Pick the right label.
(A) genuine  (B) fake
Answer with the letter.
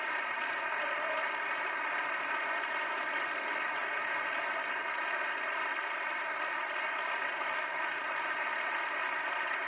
B